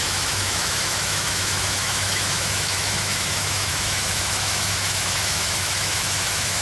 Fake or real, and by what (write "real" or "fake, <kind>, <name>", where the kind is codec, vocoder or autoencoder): fake, autoencoder, DAC-VAE